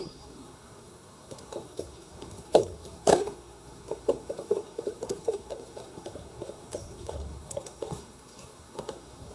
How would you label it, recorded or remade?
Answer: remade